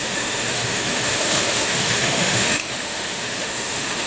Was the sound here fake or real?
fake